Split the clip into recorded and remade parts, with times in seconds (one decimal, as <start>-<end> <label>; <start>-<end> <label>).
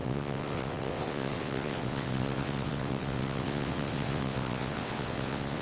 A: 0.0-5.6 remade